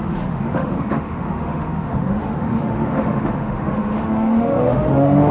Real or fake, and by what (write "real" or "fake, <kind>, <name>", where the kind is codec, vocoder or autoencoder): fake, autoencoder, DAC-VAE